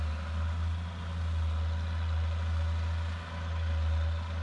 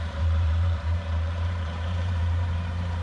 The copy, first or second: second